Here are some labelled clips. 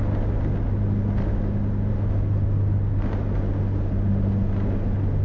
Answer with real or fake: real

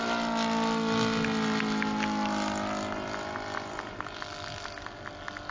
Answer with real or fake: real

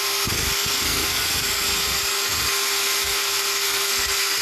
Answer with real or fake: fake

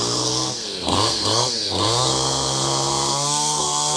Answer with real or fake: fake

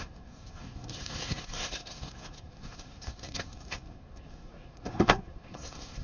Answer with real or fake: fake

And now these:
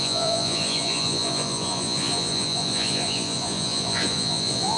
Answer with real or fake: fake